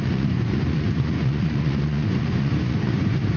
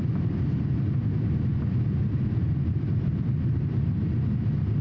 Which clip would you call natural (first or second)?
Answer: second